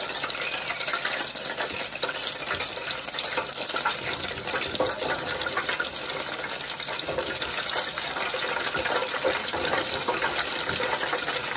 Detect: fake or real real